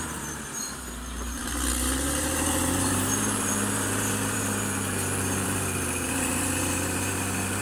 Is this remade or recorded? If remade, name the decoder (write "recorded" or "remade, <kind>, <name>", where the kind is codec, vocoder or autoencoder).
remade, vocoder, BigVGAN v2